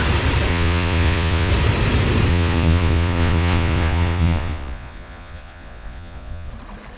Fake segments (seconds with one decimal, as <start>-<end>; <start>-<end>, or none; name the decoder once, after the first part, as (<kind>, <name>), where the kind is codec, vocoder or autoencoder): 0.5-1.5 (vocoder, Vocos); 2.3-6.5